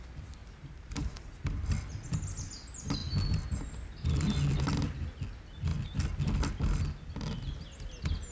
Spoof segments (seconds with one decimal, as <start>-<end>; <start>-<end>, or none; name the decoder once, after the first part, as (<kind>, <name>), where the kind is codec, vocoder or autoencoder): 0.4-1.5 (vocoder, BigVGAN v2)